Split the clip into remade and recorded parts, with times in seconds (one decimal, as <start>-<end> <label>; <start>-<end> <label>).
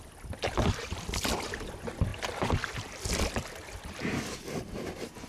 0.0-5.3 remade